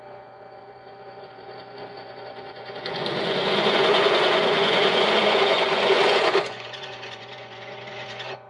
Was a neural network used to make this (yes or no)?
yes